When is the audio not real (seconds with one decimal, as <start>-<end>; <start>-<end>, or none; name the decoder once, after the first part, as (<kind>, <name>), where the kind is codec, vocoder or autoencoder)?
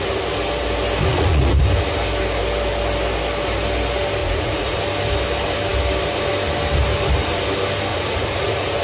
1.1-1.6 (vocoder, Vocos); 4.2-4.8; 7.9-8.8